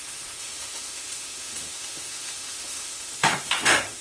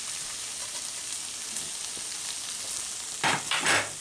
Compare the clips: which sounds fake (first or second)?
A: first